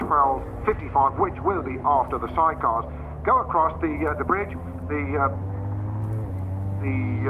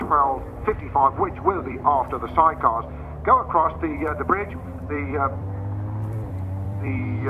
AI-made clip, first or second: second